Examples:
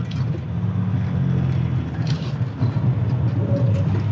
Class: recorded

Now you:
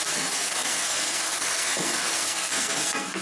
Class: remade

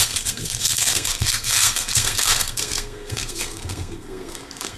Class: remade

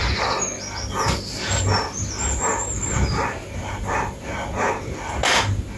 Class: recorded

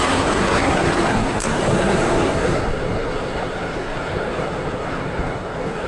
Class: remade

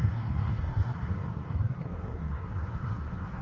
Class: remade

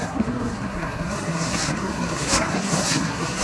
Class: remade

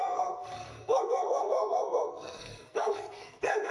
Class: remade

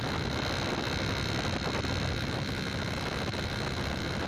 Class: recorded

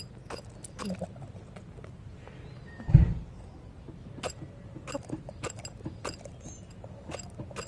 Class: recorded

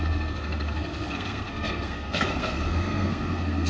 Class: remade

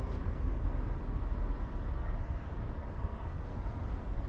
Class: remade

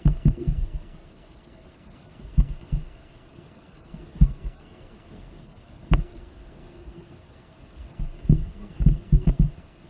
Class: remade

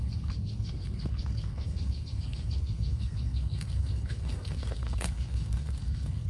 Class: remade